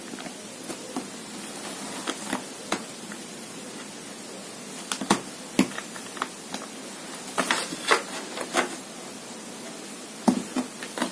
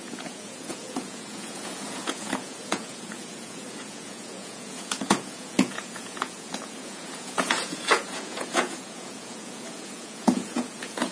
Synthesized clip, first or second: second